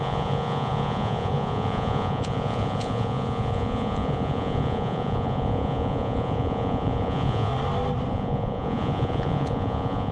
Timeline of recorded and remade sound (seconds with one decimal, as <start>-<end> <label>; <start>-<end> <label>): 0.0-7.5 remade; 7.5-8.1 recorded; 8.1-10.1 remade